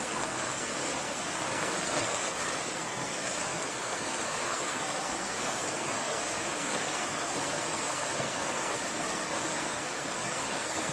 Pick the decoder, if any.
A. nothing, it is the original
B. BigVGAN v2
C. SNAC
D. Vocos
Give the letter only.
C